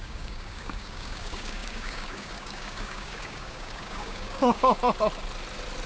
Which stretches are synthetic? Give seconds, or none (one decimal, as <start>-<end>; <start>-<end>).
0.0-4.8